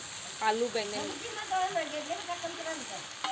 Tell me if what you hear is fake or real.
real